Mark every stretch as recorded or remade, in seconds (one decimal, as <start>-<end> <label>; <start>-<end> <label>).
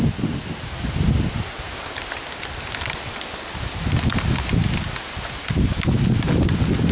0.0-1.7 recorded; 1.7-4.1 remade; 4.1-6.9 recorded